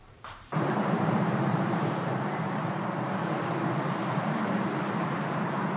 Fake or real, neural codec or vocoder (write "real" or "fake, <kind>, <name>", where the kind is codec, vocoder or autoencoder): fake, vocoder, BigVGAN v2